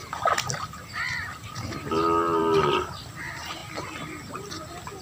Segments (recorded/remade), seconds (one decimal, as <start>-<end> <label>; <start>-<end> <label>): 0.0-5.0 recorded